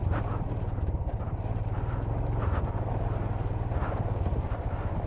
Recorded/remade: recorded